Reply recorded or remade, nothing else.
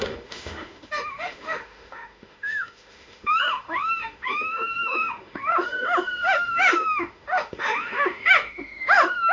remade